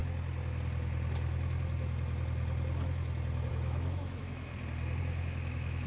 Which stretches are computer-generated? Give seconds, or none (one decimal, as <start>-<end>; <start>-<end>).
3.5-4.5; 5.0-5.9